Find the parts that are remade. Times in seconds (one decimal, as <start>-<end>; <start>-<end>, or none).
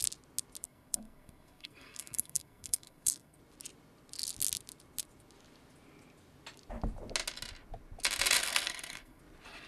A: 0.6-3.4; 8.4-9.2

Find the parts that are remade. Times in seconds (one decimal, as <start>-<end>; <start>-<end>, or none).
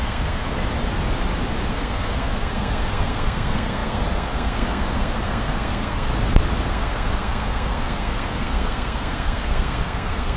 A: 0.0-0.5; 1.7-6.1; 6.7-10.4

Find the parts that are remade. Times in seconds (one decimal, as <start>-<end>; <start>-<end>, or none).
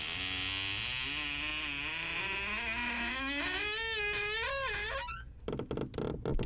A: none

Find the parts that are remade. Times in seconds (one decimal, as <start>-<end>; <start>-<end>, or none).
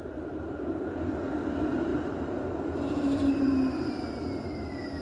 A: 1.9-3.9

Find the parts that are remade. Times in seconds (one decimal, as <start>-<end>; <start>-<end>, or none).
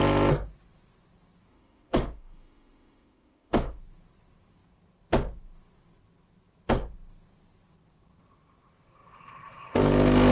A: 1.5-3.8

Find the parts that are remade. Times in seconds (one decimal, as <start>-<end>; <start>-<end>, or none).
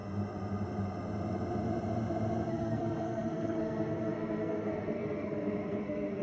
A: 2.5-6.2